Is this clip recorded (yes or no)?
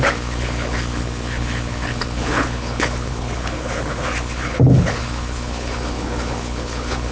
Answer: no